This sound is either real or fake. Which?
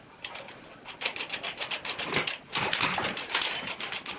real